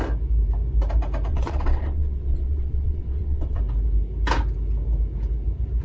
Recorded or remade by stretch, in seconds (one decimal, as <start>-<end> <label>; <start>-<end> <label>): 0.0-1.3 recorded; 1.3-3.6 remade; 3.6-5.8 recorded